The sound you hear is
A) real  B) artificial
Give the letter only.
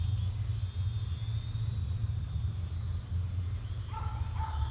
A